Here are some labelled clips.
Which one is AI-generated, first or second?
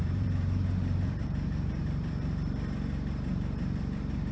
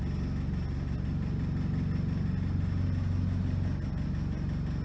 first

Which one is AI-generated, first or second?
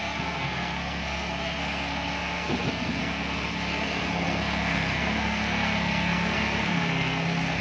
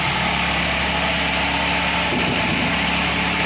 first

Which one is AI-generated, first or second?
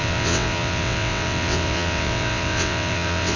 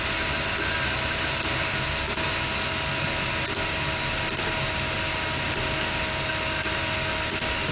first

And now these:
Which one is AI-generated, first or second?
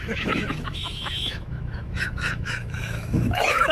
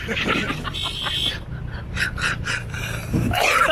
first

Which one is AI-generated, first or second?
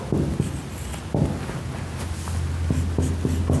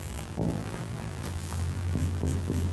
second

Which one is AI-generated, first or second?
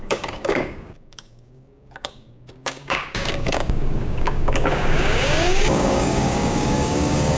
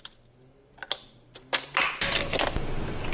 first